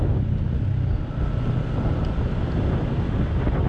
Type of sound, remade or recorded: recorded